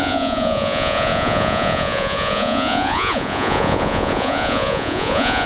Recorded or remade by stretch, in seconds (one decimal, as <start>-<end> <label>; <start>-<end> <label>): 0.0-5.5 remade